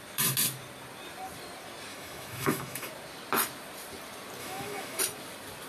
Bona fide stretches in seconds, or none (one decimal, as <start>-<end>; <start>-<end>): 0.0-1.9; 2.9-4.4; 5.0-5.7